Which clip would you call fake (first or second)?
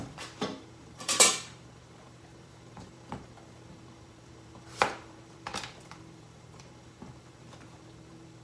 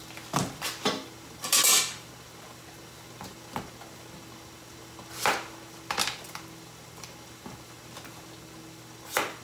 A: first